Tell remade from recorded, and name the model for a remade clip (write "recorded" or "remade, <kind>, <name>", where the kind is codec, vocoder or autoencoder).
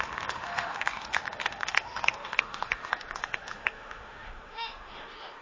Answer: remade, autoencoder, DAC-VAE